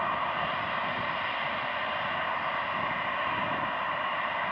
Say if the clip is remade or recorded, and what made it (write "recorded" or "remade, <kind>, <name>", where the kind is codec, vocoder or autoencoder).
recorded